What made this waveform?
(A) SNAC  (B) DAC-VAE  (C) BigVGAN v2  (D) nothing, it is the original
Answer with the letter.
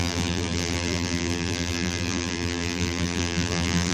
C